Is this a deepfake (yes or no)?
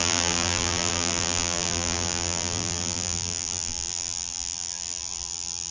yes